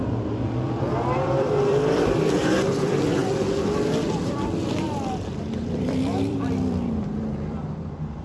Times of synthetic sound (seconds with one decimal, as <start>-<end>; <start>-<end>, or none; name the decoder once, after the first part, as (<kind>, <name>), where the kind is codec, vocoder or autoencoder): 0.0-3.2 (vocoder, BigVGAN v2); 5.4-8.2